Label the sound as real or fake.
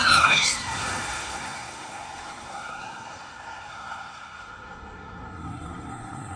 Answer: fake